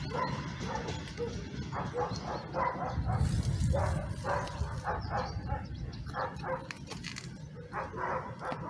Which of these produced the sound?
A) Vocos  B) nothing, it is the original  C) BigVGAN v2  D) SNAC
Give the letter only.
B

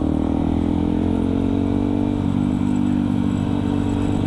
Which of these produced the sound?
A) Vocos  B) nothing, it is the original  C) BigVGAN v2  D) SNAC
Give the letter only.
B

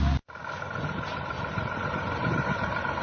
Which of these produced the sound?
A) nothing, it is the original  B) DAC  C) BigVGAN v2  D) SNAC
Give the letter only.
C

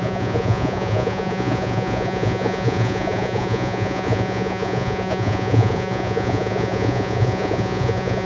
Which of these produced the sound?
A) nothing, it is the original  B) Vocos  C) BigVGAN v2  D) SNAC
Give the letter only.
B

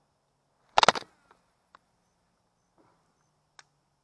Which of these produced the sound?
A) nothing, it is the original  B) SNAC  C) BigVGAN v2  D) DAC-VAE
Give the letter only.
A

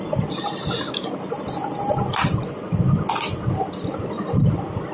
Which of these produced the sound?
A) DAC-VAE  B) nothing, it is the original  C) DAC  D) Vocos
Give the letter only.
B